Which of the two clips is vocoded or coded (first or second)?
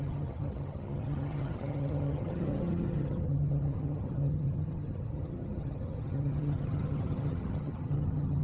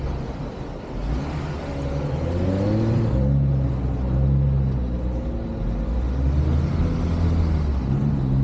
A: first